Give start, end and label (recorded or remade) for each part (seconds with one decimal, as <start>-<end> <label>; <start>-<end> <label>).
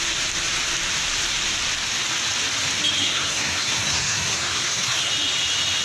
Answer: 0.0-3.0 recorded; 3.0-5.1 remade; 5.1-5.8 recorded